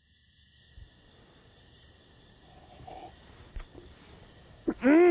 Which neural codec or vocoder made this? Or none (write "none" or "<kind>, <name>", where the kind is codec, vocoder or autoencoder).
none